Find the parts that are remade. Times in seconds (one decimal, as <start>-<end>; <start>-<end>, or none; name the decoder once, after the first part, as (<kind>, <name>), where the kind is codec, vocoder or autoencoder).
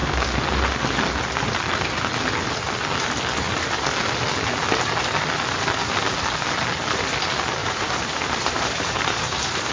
7.6-9.7 (vocoder, BigVGAN v2)